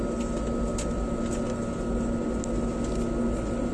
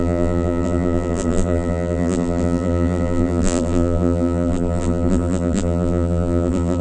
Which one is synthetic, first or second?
second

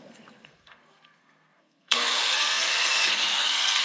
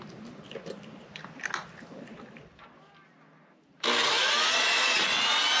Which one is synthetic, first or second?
first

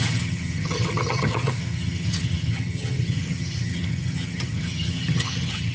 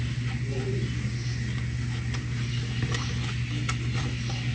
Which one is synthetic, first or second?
first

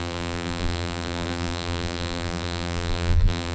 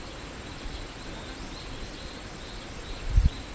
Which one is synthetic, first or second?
first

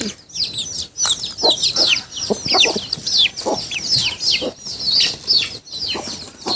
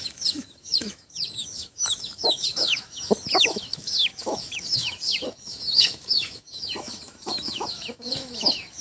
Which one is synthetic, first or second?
second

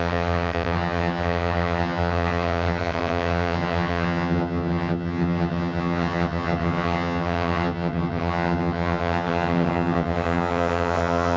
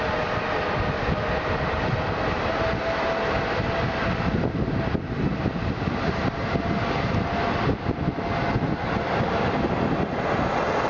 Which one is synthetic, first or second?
first